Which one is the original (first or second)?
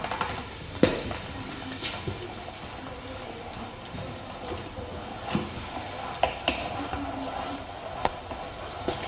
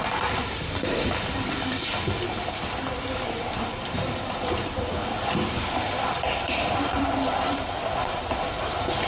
first